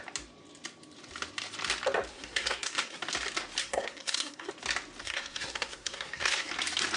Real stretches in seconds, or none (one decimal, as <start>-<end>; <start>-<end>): 0.0-2.1; 3.0-3.6; 4.5-5.0; 6.5-7.0